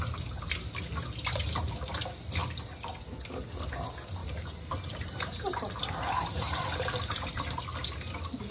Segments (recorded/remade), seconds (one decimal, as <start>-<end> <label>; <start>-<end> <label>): 0.0-4.2 recorded; 4.2-7.6 remade; 7.6-8.5 recorded